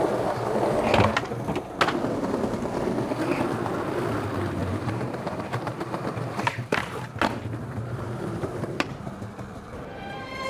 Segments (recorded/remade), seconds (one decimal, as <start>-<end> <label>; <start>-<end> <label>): 0.0-4.6 recorded; 4.6-9.1 remade; 9.1-10.5 recorded